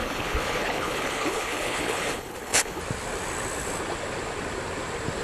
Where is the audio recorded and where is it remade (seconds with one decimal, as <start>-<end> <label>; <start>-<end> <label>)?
0.0-2.8 remade; 2.8-5.2 recorded